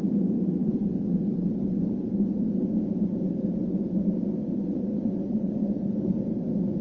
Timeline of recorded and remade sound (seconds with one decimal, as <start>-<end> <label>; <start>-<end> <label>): 0.0-4.6 recorded; 4.6-5.8 remade; 5.8-6.8 recorded